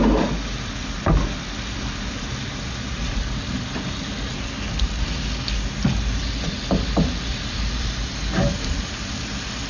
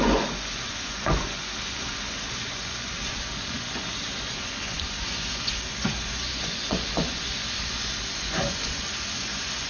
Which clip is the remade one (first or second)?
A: second